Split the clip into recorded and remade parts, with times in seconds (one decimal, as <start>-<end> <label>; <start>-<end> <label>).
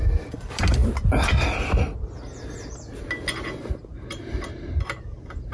0.0-5.5 recorded